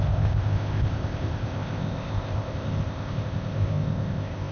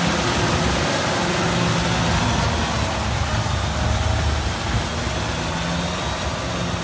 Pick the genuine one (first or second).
second